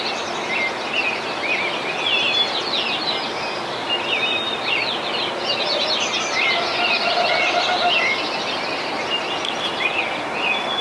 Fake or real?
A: real